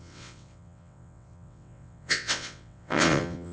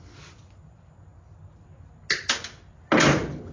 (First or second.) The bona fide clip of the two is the second